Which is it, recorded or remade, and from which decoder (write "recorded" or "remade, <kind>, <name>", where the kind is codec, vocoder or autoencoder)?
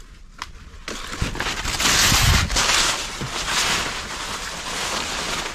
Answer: recorded